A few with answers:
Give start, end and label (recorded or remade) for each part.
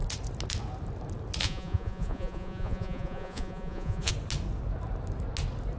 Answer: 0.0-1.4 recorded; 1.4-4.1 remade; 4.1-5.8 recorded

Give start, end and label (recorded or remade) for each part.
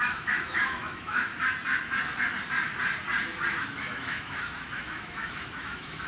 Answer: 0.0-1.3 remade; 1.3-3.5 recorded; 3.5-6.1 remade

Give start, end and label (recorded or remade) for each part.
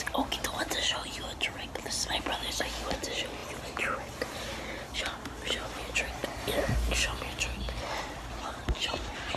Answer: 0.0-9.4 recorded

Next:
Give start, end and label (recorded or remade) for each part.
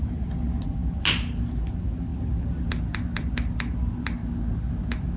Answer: 0.0-5.2 recorded